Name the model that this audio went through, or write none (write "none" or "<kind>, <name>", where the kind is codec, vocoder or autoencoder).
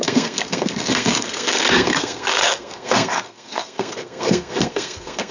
codec, SNAC